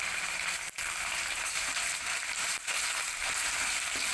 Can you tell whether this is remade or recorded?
remade